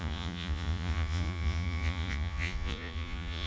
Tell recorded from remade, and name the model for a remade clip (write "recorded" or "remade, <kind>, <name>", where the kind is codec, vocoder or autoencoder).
remade, vocoder, Vocos